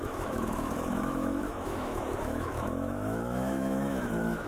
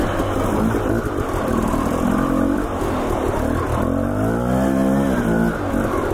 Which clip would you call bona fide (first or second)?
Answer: second